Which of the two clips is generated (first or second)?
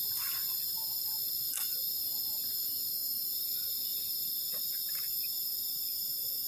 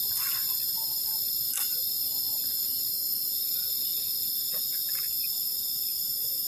second